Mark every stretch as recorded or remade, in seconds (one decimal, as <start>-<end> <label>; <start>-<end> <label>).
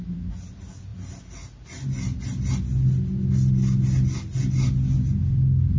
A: 0.0-5.8 recorded